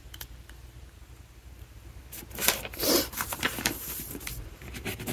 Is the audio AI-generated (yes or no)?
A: yes